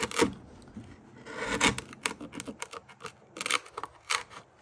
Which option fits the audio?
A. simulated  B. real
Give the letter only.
B